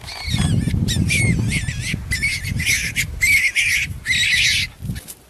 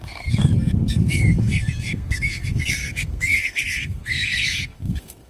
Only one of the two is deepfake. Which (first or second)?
second